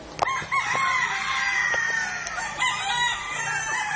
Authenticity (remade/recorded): recorded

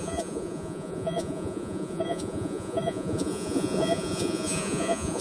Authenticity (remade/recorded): remade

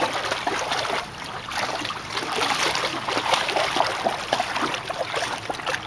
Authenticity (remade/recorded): recorded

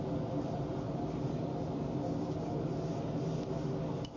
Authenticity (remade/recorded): recorded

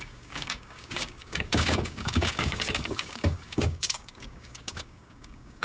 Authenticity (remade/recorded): remade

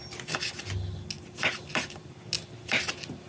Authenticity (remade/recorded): recorded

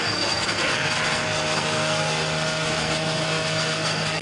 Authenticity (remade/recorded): remade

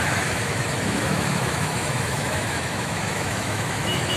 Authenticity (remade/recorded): remade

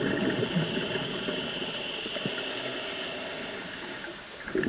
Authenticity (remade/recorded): recorded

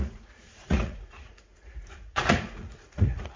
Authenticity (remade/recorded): remade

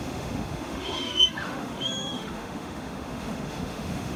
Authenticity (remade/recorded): remade